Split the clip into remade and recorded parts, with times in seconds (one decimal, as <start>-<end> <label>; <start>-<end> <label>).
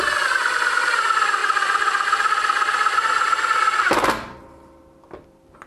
0.0-1.4 recorded; 1.4-4.8 remade; 4.8-5.7 recorded